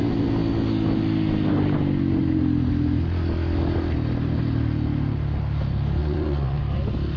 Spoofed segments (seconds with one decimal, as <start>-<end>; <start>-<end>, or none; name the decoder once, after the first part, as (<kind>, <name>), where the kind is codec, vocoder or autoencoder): 6.0-6.6 (vocoder, Vocos)